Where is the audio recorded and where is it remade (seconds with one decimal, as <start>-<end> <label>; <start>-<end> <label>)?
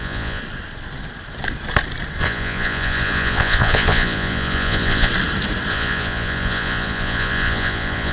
0.0-0.4 remade; 0.4-2.2 recorded; 2.2-5.1 remade; 5.1-5.7 recorded; 5.7-8.1 remade